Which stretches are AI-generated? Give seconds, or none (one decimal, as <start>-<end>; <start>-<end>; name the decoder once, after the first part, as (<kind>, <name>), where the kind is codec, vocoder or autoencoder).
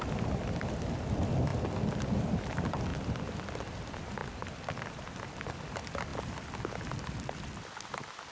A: 0.0-1.5 (vocoder, BigVGAN v2); 2.2-2.9; 3.6-4.2; 4.9-6.1; 6.7-8.3